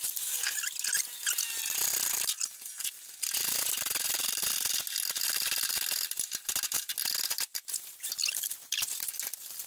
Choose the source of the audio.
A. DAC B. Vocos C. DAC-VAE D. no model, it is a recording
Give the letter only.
D